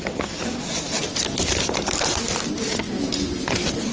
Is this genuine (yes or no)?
yes